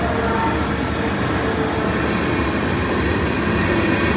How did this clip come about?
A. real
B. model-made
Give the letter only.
A